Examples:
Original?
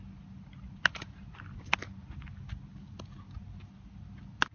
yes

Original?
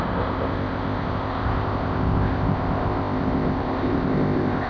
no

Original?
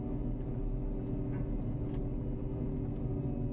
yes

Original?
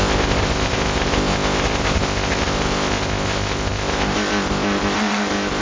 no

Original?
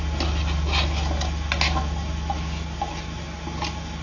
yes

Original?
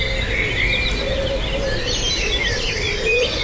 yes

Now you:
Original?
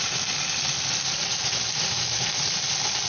yes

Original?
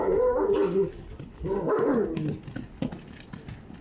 yes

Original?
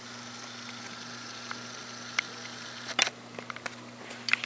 yes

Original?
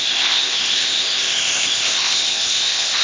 no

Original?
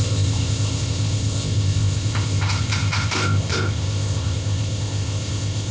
no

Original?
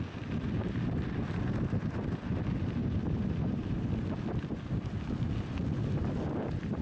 yes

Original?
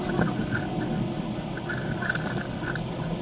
yes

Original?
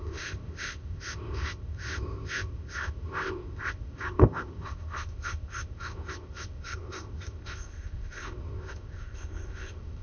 no